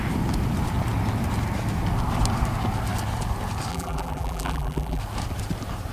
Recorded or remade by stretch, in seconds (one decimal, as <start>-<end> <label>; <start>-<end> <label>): 0.0-3.7 recorded; 3.7-5.0 remade; 5.0-5.9 recorded